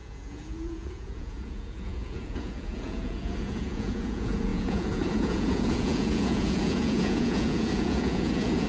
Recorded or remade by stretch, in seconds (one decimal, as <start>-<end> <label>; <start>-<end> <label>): 0.0-8.7 remade